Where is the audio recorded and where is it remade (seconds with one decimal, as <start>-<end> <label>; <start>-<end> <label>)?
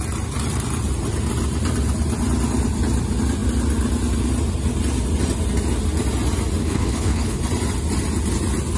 0.0-6.6 recorded; 6.6-7.4 remade; 7.4-8.8 recorded